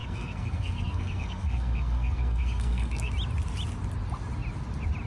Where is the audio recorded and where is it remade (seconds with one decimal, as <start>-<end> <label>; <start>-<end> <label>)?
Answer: 0.0-3.1 remade; 3.1-5.1 recorded

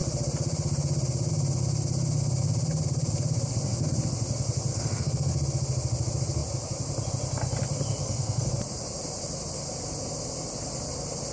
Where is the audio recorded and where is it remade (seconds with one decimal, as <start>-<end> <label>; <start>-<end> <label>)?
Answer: 0.0-4.7 recorded; 4.7-5.3 remade; 5.3-8.0 recorded; 8.0-8.5 remade; 8.5-11.3 recorded

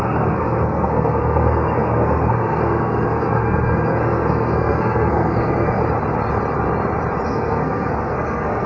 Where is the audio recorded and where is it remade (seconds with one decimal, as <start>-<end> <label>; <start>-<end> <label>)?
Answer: 0.0-5.8 remade; 5.8-7.3 recorded; 7.3-8.7 remade

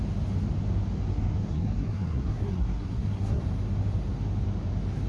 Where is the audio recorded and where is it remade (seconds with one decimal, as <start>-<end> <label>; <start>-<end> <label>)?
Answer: 0.0-1.1 recorded; 1.1-3.4 remade; 3.4-5.1 recorded

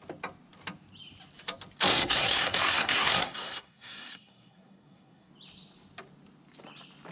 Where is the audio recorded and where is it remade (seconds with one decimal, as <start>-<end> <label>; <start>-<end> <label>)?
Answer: 0.0-1.9 recorded; 1.9-5.3 remade; 5.3-7.1 recorded